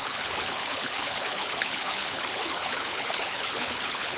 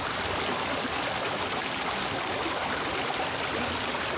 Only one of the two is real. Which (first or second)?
second